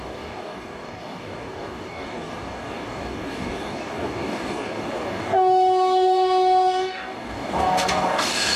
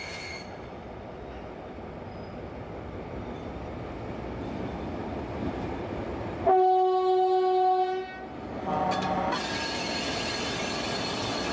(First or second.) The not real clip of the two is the first